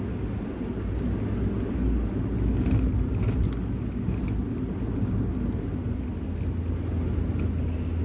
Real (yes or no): yes